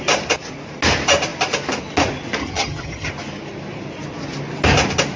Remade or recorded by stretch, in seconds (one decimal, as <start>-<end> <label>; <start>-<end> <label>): 0.0-2.4 recorded; 2.4-3.1 remade; 3.1-5.2 recorded